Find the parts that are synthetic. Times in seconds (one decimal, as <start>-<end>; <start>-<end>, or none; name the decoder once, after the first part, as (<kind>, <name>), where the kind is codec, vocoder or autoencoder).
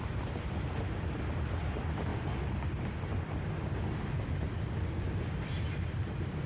none